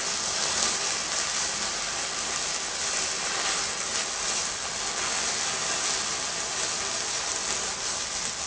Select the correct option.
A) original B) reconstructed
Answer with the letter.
A